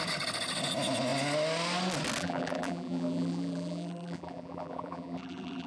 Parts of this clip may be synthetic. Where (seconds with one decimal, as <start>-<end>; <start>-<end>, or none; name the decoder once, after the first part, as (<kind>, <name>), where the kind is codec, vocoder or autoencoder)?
2.2-5.7 (vocoder, BigVGAN v2)